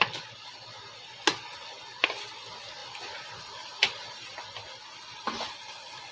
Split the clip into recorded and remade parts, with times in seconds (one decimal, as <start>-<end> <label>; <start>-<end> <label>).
0.0-1.5 recorded; 1.5-2.0 remade; 2.0-2.8 recorded; 2.8-4.4 remade; 4.4-6.1 recorded

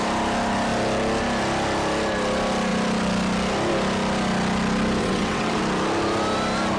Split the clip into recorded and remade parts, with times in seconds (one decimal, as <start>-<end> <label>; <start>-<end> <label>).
0.0-5.0 recorded; 5.0-5.6 remade; 5.6-6.8 recorded